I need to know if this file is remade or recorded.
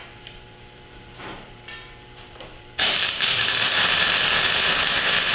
remade